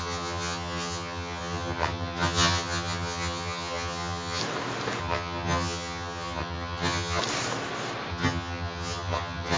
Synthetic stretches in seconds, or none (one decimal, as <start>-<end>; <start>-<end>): 0.0-4.4; 5.0-7.2; 8.1-9.6